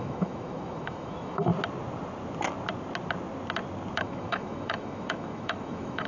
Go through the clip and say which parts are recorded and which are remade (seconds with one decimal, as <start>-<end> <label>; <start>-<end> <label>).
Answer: 0.0-1.5 remade; 1.5-4.0 recorded; 4.0-6.1 remade